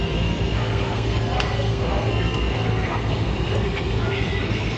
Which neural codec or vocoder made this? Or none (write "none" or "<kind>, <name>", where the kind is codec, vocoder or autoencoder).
codec, SNAC